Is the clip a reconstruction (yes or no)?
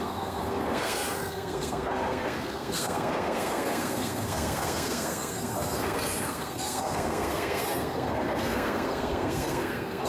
yes